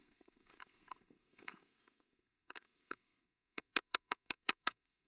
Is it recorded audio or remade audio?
remade